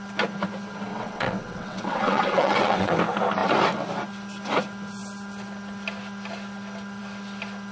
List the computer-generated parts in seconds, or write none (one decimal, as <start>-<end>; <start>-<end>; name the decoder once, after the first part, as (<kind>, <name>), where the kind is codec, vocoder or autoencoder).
0.9-3.0 (vocoder, WaveNeXt)